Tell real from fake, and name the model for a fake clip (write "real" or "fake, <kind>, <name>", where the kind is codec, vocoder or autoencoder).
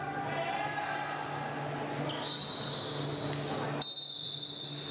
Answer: real